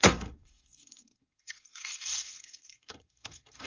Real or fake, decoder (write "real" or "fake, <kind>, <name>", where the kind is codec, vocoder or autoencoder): fake, codec, SNAC